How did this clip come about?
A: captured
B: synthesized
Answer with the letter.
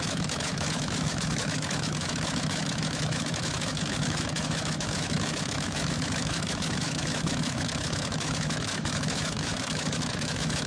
B